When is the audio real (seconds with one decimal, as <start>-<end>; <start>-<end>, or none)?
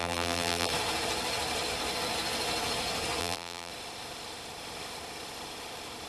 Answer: 0.7-3.2; 3.7-6.1